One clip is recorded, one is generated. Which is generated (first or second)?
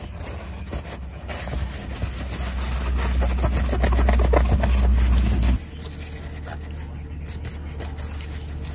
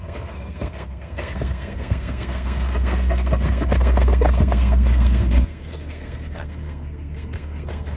second